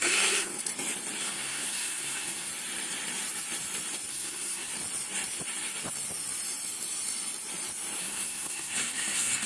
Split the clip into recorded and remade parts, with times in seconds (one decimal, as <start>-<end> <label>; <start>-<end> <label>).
0.0-0.5 remade; 0.5-1.2 recorded; 1.2-2.5 remade; 2.5-4.1 recorded; 4.1-4.7 remade; 4.7-8.0 recorded; 8.0-9.5 remade